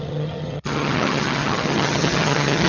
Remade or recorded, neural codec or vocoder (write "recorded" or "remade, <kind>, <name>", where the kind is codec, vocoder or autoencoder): remade, vocoder, HiFi-GAN